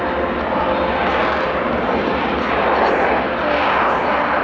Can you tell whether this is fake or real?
real